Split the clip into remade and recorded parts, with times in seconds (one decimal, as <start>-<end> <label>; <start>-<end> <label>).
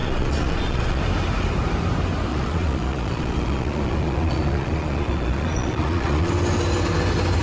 0.0-1.0 remade; 1.0-2.3 recorded; 2.3-6.3 remade; 6.3-7.4 recorded